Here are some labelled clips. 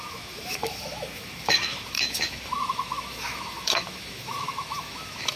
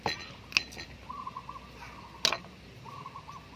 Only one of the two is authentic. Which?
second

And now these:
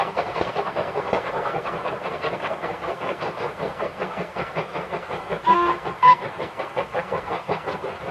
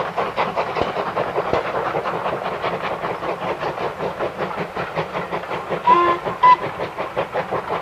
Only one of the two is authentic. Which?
second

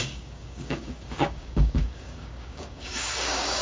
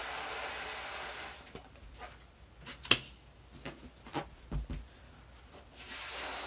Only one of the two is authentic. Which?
second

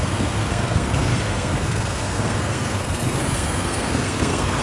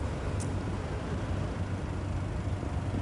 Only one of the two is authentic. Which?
second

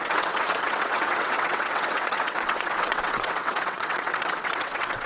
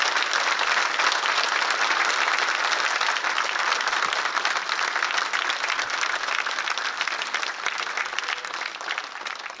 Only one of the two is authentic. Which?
second